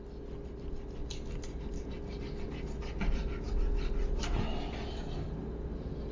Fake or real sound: real